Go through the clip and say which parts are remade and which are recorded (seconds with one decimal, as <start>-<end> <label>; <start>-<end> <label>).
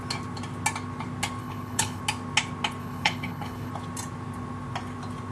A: 0.0-1.4 recorded; 1.4-2.0 remade; 2.0-2.8 recorded; 2.8-3.7 remade; 3.7-5.3 recorded